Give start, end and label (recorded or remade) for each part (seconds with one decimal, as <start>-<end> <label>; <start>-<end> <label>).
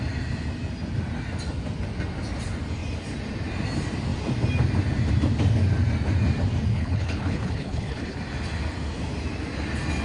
0.0-6.7 recorded; 6.7-8.2 remade; 8.2-10.0 recorded